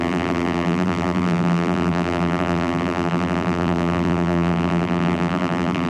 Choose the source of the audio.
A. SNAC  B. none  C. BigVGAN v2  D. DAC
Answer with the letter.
C